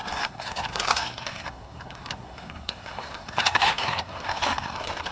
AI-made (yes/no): yes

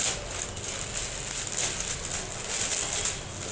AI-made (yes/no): no